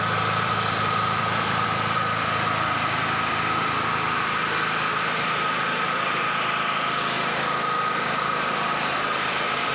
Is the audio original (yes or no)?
no